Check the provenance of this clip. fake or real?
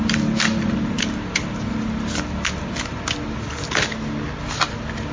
real